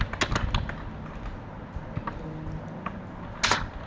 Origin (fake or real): real